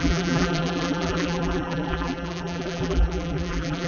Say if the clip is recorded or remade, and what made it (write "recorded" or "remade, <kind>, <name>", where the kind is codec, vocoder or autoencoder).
remade, vocoder, BigVGAN v2